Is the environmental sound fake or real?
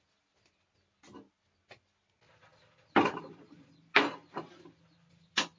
real